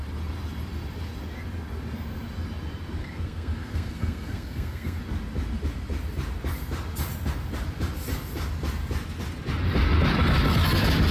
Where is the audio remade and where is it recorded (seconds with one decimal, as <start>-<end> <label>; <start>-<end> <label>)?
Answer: 0.0-3.0 recorded; 3.0-5.0 remade; 5.0-11.1 recorded